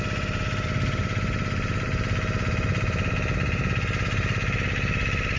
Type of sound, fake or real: real